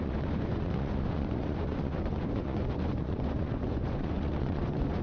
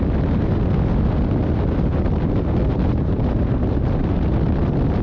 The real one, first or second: second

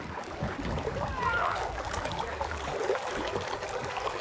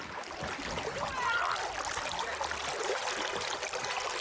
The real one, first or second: second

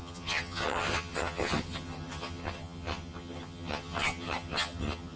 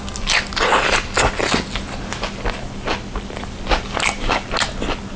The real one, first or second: second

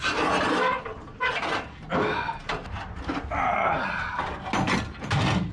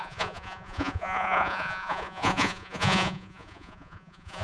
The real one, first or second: first